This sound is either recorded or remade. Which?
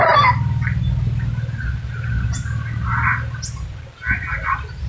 recorded